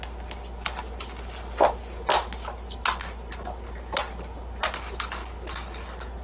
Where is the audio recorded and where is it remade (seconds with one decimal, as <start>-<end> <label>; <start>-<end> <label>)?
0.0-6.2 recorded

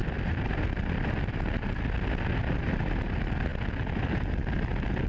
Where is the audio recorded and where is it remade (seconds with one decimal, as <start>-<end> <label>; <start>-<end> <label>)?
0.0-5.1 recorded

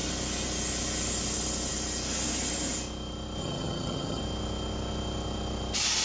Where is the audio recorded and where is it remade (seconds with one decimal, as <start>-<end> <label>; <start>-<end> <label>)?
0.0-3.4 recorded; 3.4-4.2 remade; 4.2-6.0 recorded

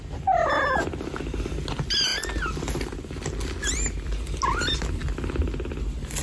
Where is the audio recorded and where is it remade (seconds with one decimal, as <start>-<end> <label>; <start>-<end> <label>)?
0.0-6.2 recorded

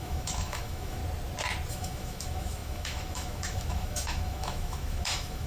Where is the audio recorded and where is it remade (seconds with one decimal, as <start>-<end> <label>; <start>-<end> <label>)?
0.0-1.0 remade; 1.0-1.7 recorded; 1.7-5.5 remade